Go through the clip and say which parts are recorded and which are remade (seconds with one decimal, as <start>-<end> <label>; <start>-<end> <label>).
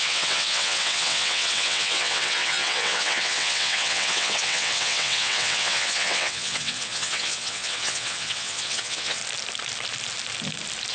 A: 0.0-9.2 remade; 9.2-10.9 recorded